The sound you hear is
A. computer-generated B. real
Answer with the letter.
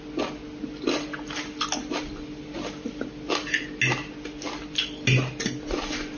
B